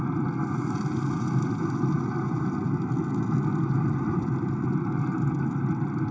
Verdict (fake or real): real